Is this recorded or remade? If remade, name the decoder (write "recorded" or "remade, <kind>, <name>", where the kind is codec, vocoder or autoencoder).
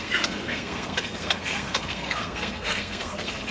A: remade, codec, SNAC